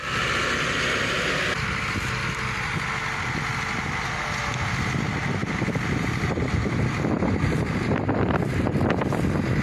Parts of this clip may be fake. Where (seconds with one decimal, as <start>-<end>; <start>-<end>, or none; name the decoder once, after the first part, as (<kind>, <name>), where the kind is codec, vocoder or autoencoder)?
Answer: none

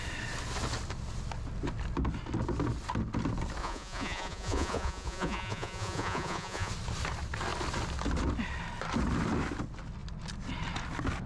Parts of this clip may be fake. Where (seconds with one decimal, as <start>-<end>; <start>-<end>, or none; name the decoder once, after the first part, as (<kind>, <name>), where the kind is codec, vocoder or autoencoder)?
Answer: 3.6-6.7 (vocoder, Vocos)

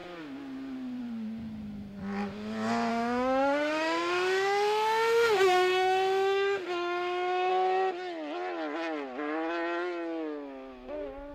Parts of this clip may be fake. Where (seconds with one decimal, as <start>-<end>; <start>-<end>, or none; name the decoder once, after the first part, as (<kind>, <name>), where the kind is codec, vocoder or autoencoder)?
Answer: 2.9-7.5 (autoencoder, DAC-VAE)

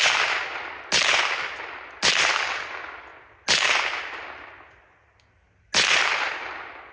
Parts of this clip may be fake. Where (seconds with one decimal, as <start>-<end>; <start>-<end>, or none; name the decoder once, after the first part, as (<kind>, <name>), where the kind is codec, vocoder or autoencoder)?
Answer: none

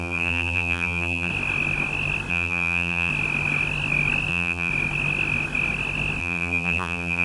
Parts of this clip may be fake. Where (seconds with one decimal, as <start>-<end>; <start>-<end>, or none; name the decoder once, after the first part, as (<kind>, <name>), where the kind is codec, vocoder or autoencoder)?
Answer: 0.0-1.3 (vocoder, BigVGAN v2); 2.3-3.1; 4.3-4.7; 6.2-7.2